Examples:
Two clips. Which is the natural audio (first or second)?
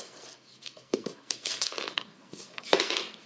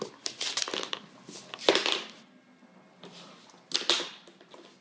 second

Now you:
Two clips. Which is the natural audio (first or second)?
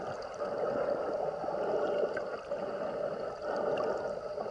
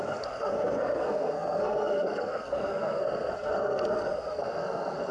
first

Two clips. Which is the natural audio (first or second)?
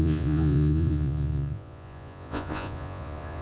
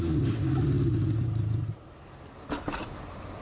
second